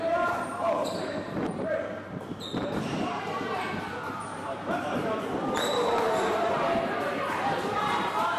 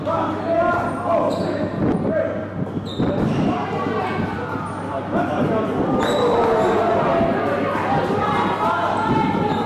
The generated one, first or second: first